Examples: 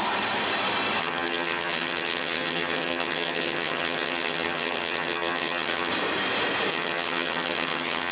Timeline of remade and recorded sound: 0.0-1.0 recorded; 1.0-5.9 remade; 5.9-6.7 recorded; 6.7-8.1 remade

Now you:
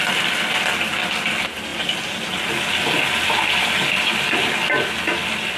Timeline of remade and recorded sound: 0.0-1.7 recorded; 1.7-2.5 remade; 2.5-5.6 recorded

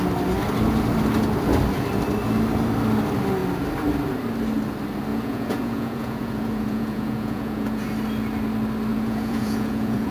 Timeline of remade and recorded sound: 0.0-5.1 recorded; 5.1-7.9 remade; 7.9-8.9 recorded; 8.9-10.1 remade